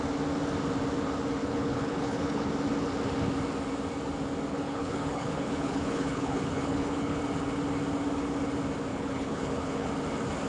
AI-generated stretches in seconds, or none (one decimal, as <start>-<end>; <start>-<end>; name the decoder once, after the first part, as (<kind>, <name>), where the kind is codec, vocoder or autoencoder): 1.4-2.5 (codec, HILCodec); 4.5-7.2; 8.9-9.9